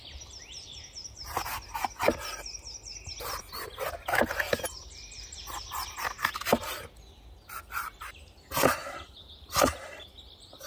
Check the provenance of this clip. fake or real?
real